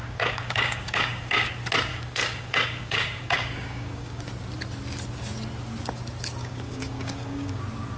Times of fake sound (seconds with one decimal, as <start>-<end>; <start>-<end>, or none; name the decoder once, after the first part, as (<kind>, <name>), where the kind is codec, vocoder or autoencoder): 0.0-1.5 (codec, DAC); 1.9-4.2; 6.4-7.6